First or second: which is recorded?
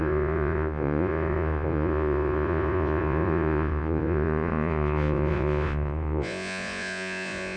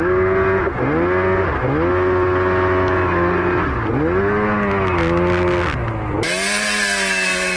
second